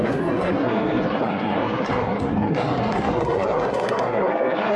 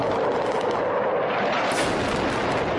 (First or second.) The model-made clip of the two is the first